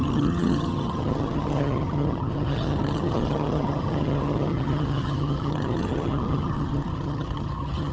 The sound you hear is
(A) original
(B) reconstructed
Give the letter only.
B